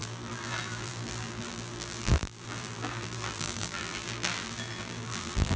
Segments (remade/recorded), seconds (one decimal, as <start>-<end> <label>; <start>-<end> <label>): 0.0-5.6 remade